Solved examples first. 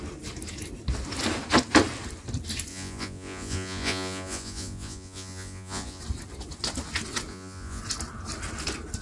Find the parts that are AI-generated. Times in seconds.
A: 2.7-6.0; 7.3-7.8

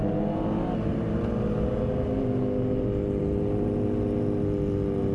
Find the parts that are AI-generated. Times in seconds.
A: none